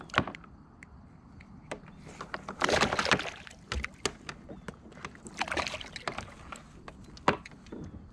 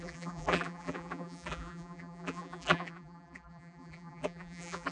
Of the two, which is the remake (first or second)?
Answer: second